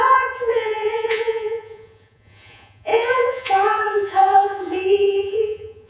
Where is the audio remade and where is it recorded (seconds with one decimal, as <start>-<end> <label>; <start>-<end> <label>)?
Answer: 0.0-5.9 remade